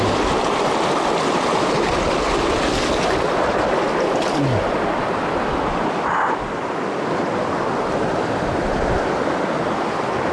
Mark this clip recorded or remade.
recorded